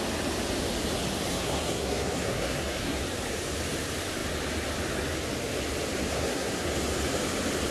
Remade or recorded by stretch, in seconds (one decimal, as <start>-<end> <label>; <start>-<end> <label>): 0.0-1.3 recorded; 1.3-3.0 remade; 3.0-6.1 recorded; 6.1-6.7 remade; 6.7-7.7 recorded